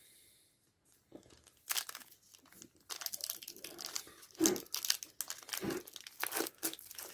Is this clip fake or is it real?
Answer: real